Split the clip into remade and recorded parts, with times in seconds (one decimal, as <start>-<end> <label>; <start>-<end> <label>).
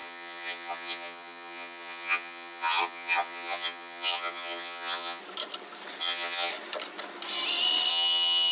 0.0-5.2 remade; 5.2-6.0 recorded; 6.0-6.5 remade; 6.5-7.9 recorded; 7.9-8.5 remade